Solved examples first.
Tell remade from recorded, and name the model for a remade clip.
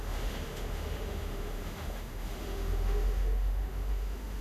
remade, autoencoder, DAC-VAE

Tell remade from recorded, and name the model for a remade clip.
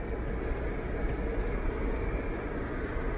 recorded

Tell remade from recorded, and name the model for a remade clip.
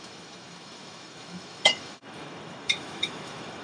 remade, autoencoder, DAC-VAE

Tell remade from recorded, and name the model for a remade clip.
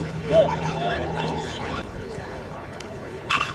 remade, codec, HILCodec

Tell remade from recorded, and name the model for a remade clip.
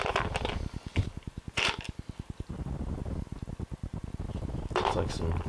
recorded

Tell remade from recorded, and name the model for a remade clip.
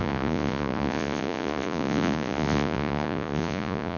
remade, vocoder, Vocos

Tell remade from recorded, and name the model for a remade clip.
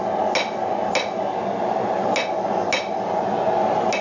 recorded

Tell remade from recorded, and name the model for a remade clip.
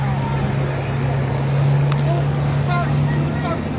recorded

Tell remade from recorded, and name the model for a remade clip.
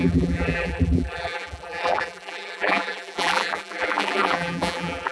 remade, vocoder, BigVGAN v2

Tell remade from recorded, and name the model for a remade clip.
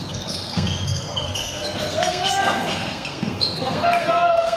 remade, codec, SNAC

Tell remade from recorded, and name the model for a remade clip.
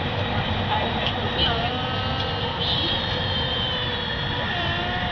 recorded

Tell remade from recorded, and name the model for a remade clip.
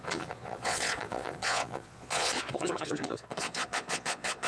remade, vocoder, Vocos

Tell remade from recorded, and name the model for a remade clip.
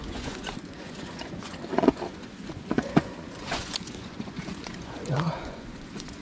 remade, vocoder, Vocos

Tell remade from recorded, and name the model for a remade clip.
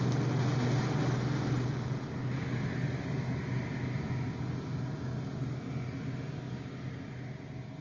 recorded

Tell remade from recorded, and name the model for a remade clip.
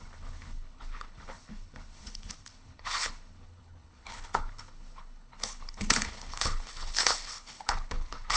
remade, codec, HILCodec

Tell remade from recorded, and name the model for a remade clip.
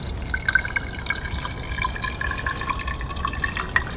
recorded